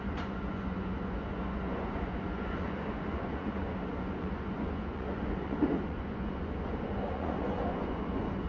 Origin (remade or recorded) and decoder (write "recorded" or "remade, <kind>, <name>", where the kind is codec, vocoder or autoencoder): remade, vocoder, Vocos